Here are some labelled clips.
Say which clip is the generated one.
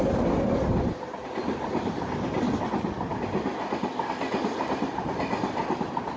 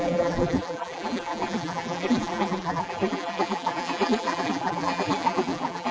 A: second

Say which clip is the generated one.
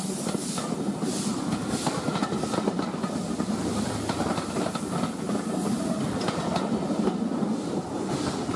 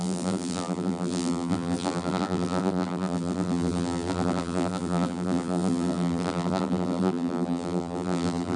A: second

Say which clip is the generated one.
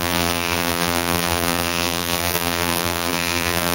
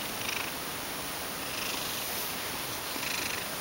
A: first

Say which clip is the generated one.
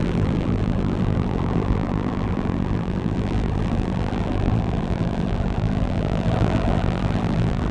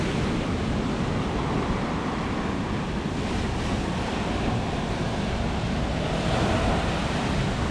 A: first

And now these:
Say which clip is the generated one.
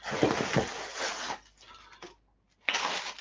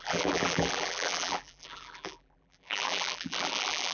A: second